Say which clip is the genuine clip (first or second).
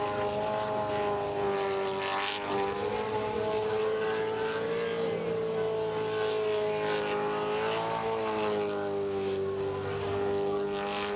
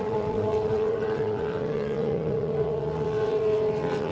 first